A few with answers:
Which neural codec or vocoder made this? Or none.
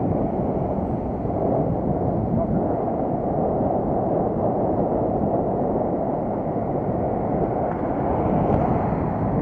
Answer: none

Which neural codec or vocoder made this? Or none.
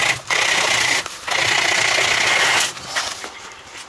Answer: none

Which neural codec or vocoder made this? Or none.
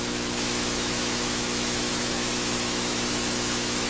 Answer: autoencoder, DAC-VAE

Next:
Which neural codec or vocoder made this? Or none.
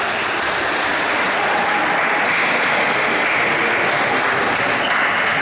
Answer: none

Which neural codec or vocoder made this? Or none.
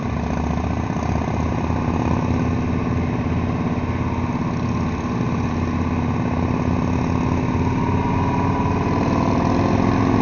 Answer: none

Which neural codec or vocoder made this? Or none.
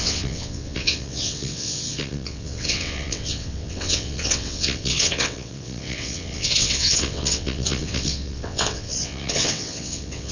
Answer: vocoder, WaveNeXt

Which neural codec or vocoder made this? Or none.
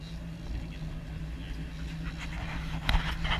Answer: none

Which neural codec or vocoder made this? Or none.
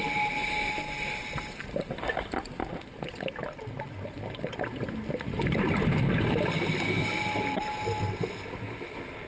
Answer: none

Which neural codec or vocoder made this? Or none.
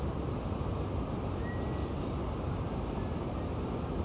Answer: none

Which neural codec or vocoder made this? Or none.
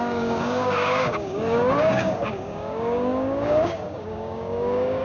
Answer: codec, DAC